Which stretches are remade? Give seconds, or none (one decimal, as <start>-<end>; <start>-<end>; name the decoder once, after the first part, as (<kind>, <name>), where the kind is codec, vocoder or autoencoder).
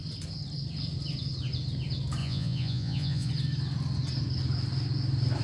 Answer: 2.2-3.3 (vocoder, Vocos)